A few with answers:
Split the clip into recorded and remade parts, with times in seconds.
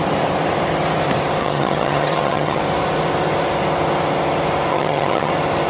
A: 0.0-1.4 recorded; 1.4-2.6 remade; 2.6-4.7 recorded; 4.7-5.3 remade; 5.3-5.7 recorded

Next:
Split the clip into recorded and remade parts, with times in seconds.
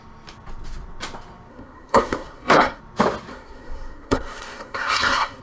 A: 0.0-1.5 recorded; 1.5-2.8 remade; 2.8-3.3 recorded; 3.3-5.4 remade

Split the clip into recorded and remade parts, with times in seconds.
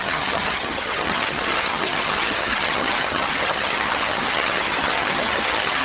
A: 0.0-5.8 remade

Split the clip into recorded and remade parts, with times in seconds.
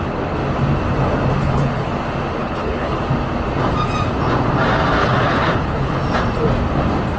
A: 0.0-1.4 recorded; 1.4-1.9 remade; 1.9-2.4 recorded; 2.4-3.0 remade; 3.0-5.0 recorded; 5.0-6.0 remade; 6.0-7.2 recorded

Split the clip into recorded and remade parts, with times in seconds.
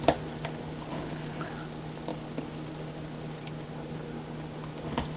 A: 0.0-0.9 recorded; 0.9-1.5 remade; 1.5-5.2 recorded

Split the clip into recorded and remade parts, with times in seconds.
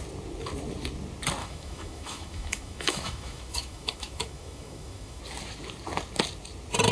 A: 0.0-1.4 recorded; 1.4-5.2 remade; 5.2-6.9 recorded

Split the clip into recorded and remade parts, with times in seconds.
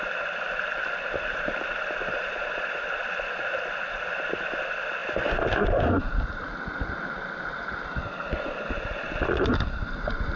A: 0.0-2.1 recorded; 2.1-2.8 remade; 2.8-10.4 recorded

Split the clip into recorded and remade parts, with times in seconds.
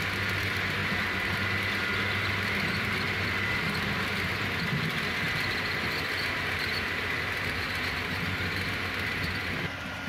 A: 0.0-10.1 recorded